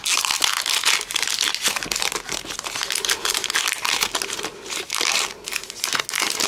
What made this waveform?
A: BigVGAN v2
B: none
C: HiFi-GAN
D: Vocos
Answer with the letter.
B